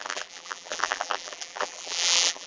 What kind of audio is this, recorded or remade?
remade